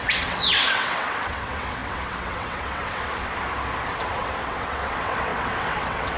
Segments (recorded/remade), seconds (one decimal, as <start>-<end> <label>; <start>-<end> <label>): 0.0-3.3 remade; 3.3-3.9 recorded; 3.9-6.2 remade